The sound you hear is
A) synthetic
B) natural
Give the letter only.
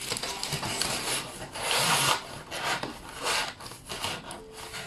B